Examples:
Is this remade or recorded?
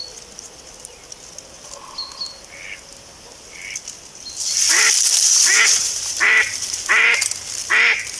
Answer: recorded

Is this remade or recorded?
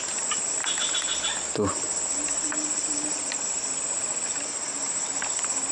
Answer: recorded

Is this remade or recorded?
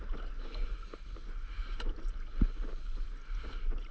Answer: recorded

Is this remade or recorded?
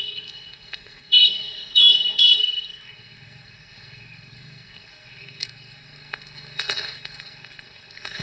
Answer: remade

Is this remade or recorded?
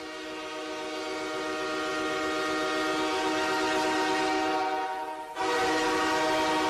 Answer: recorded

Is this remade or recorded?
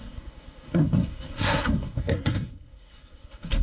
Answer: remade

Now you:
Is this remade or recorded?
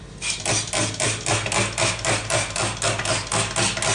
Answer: recorded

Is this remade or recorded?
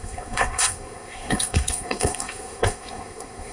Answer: remade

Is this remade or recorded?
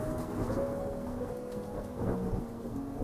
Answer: remade